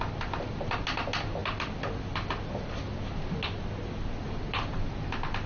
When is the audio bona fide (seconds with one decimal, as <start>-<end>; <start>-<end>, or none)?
0.0-5.5